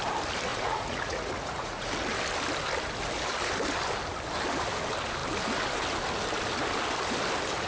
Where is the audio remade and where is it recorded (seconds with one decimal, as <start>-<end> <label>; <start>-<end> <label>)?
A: 0.0-0.5 recorded; 0.5-1.9 remade; 1.9-7.7 recorded